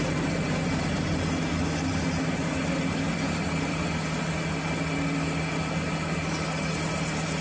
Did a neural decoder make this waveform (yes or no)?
no